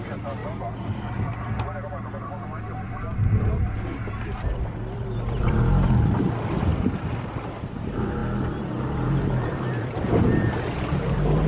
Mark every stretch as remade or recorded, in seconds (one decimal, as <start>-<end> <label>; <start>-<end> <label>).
0.0-0.4 remade; 0.4-2.8 recorded; 2.8-6.7 remade; 6.7-7.3 recorded; 7.3-11.5 remade